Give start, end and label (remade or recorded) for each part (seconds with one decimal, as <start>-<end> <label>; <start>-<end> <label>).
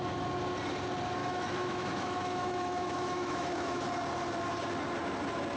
0.0-1.2 recorded; 1.2-3.8 remade; 3.8-5.6 recorded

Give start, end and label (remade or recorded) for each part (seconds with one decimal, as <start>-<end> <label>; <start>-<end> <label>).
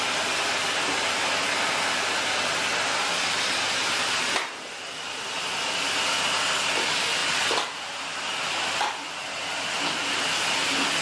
0.0-11.0 recorded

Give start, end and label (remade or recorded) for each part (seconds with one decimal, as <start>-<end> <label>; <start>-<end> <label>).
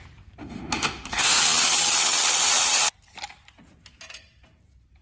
0.0-0.4 recorded; 0.4-1.4 remade; 1.4-5.0 recorded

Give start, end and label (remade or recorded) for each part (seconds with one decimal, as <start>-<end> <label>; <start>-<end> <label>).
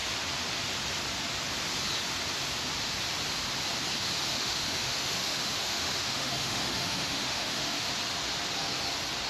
0.0-4.3 recorded; 4.3-7.9 remade; 7.9-9.3 recorded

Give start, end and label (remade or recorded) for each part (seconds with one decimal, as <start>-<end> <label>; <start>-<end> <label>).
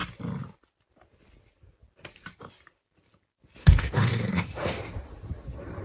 0.0-3.6 recorded; 3.6-4.8 remade; 4.8-5.8 recorded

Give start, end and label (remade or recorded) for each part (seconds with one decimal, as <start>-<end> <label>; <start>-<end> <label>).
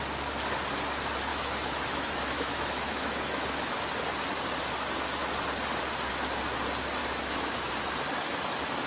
0.0-1.3 recorded; 1.3-3.8 remade; 3.8-7.0 recorded; 7.0-7.7 remade; 7.7-8.9 recorded